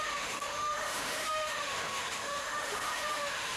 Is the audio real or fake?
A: fake